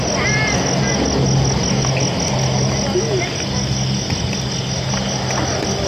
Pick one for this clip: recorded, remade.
recorded